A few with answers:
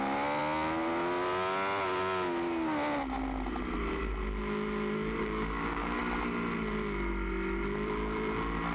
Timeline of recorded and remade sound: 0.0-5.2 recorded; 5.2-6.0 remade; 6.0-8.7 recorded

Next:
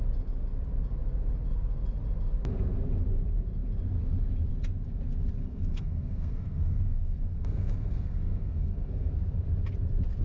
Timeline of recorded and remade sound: 0.0-5.4 recorded; 5.4-9.1 remade; 9.1-10.2 recorded

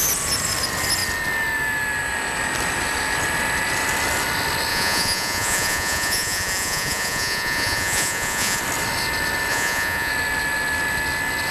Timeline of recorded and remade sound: 0.0-4.7 recorded; 4.7-8.6 remade; 8.6-9.5 recorded; 9.5-10.1 remade; 10.1-11.5 recorded